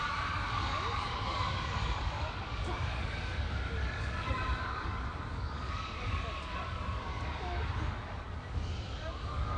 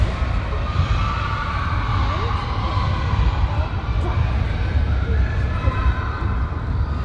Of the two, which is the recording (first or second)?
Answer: second